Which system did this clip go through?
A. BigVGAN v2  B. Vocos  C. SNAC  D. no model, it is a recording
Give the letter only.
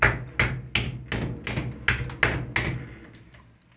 D